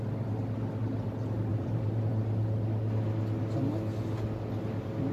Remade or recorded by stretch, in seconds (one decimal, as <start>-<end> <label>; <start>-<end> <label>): 0.0-1.5 recorded; 1.5-2.1 remade; 2.1-5.1 recorded